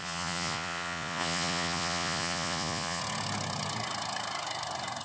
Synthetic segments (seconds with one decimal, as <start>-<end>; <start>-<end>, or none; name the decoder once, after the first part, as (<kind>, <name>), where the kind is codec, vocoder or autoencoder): 0.0-3.0 (vocoder, Vocos)